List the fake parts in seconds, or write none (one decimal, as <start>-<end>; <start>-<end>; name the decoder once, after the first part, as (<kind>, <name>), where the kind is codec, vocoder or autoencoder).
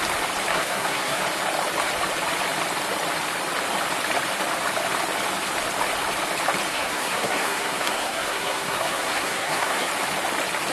0.5-1.2 (codec, SNAC); 6.7-9.9